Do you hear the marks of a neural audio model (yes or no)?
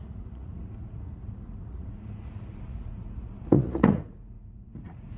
yes